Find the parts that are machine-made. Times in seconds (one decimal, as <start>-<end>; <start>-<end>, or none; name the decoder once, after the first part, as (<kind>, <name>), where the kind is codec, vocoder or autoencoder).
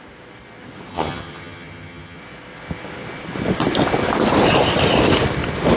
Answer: 0.9-2.2 (vocoder, HiFi-GAN)